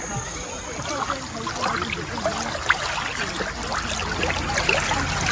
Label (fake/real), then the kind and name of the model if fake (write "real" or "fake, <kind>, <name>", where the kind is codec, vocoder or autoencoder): real